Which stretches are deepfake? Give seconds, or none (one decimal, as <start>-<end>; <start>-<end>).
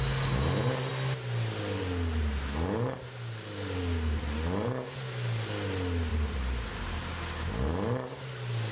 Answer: 6.1-7.1